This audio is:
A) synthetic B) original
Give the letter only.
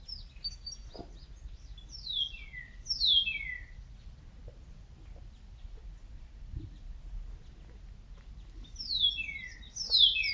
B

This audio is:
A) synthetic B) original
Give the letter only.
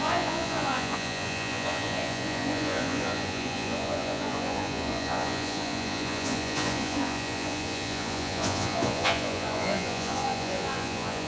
A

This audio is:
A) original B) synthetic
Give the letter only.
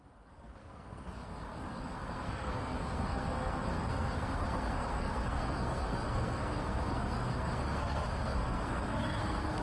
B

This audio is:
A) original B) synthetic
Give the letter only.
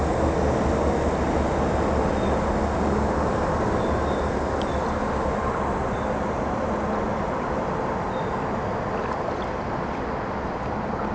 A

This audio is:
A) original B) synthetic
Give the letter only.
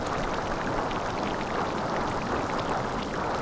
A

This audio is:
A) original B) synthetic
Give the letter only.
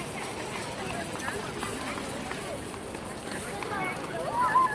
A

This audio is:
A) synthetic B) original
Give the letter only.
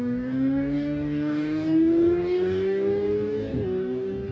A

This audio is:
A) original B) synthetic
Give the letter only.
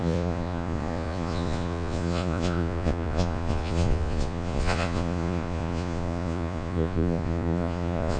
B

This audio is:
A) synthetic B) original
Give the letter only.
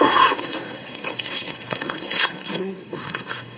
A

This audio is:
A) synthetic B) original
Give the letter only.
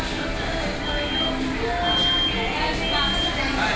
B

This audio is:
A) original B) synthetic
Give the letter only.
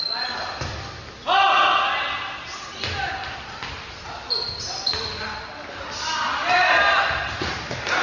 A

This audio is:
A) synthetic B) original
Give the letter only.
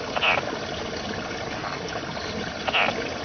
B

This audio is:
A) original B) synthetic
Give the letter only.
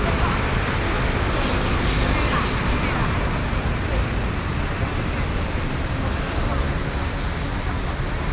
A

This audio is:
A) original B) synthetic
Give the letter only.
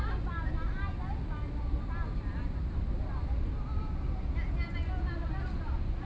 A